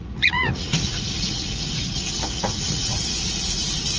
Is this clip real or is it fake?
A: fake